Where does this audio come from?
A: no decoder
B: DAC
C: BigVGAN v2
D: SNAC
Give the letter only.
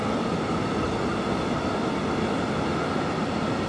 A